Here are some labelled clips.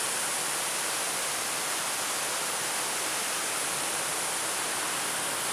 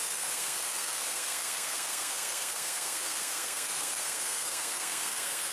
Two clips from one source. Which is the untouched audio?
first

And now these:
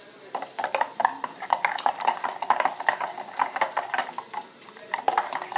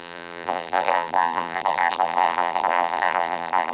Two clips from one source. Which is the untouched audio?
first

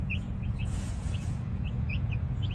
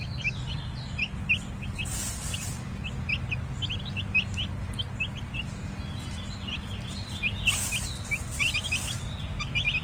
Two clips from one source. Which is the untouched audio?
second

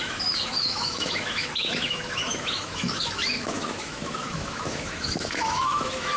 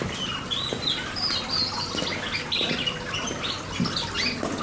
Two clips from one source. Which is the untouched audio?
second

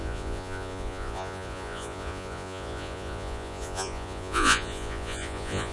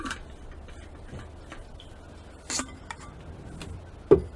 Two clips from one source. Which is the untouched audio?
second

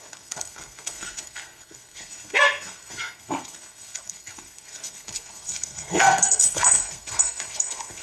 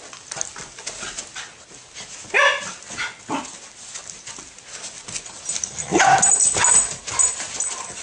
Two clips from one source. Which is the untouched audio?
second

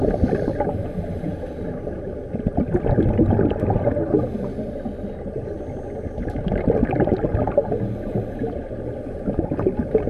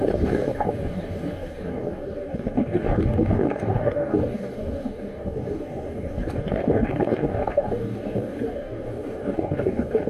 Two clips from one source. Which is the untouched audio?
first